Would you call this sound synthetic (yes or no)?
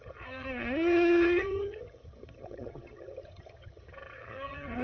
yes